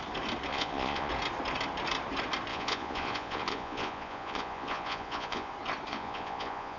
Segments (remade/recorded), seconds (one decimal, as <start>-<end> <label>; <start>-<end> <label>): 0.0-0.5 recorded; 0.5-1.1 remade; 1.1-2.5 recorded; 2.5-5.5 remade; 5.5-5.9 recorded; 5.9-6.8 remade